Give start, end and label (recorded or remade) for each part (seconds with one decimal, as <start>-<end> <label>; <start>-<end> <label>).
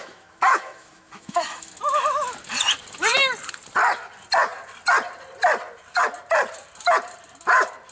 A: 0.0-1.7 remade; 1.7-7.9 recorded